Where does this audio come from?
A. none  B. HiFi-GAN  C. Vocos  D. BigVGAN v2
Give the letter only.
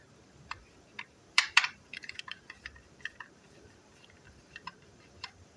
D